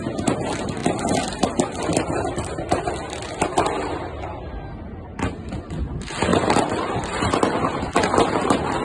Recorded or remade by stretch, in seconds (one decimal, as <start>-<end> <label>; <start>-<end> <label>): 0.0-0.8 recorded; 0.8-2.9 remade; 2.9-6.3 recorded; 6.3-7.3 remade; 7.3-8.8 recorded